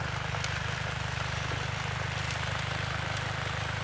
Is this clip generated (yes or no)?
no